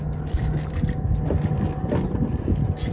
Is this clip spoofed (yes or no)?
no